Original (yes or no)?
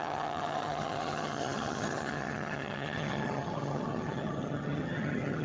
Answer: no